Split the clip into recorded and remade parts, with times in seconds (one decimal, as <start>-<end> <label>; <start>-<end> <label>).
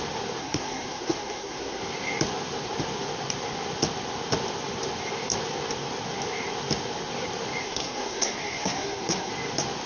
0.0-0.4 recorded; 0.4-1.8 remade; 1.8-7.6 recorded; 7.6-9.3 remade; 9.3-9.9 recorded